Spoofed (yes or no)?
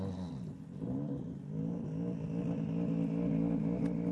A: no